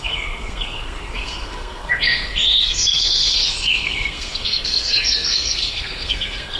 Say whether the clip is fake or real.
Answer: fake